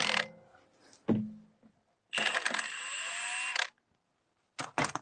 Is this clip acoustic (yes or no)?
yes